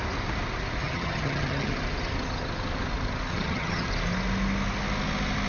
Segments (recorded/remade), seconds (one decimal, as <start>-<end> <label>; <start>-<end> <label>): 0.0-0.8 recorded; 0.8-1.7 remade; 1.7-3.3 recorded; 3.3-3.9 remade; 3.9-5.5 recorded